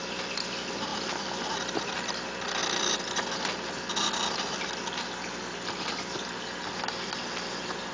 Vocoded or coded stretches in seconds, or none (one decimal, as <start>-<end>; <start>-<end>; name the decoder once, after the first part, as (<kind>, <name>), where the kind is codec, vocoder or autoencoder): none

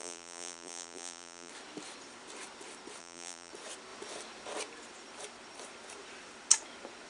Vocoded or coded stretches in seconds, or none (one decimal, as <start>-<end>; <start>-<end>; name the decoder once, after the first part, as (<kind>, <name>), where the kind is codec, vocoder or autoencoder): 0.0-1.5 (vocoder, BigVGAN v2); 3.0-3.5

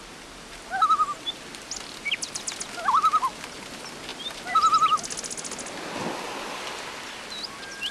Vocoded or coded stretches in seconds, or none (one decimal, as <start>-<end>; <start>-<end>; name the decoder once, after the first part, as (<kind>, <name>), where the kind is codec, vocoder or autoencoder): none

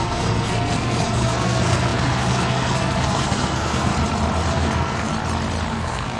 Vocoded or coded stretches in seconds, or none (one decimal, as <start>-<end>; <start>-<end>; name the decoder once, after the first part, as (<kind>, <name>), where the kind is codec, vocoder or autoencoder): 0.0-3.9 (codec, SNAC); 4.5-5.1; 5.7-6.2

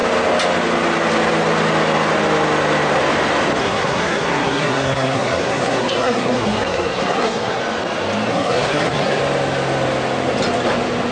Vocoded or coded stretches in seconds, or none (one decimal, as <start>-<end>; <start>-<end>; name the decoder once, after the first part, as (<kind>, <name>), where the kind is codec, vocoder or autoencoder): 3.6-7.6 (codec, SNAC); 8.3-9.2

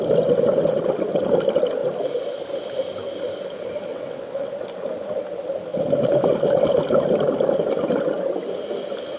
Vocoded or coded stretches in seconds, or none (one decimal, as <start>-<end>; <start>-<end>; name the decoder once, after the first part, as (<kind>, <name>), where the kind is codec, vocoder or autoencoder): 3.9-4.5 (vocoder, WaveNeXt)